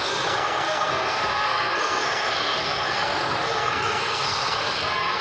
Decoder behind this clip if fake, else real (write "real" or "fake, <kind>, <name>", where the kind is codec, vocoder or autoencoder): fake, codec, SNAC